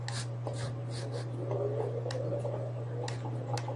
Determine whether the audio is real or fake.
real